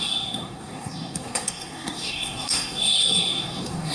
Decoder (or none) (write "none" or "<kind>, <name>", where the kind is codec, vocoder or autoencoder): codec, SNAC